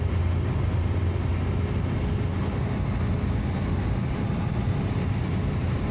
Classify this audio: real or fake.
real